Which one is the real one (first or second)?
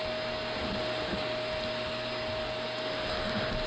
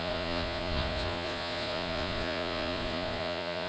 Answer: first